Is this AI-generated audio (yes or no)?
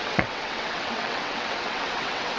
yes